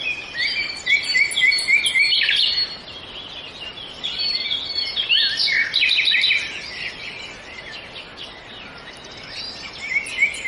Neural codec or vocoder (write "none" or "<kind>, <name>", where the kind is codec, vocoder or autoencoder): none